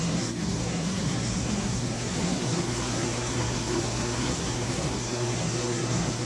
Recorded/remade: remade